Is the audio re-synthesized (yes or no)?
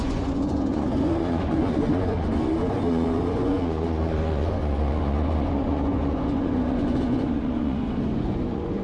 yes